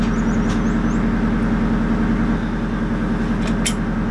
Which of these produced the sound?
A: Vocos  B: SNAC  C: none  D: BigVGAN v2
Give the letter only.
C